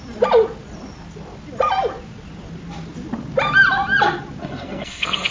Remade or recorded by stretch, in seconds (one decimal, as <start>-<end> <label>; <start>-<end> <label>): 0.0-4.4 recorded; 4.4-5.3 remade